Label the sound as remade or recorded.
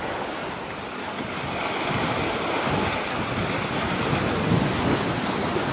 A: recorded